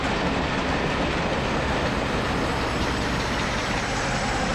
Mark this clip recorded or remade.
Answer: recorded